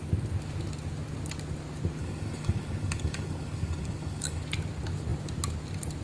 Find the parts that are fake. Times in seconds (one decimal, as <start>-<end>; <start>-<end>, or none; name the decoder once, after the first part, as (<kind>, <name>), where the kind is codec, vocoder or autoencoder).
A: 2.0-4.4 (codec, DAC)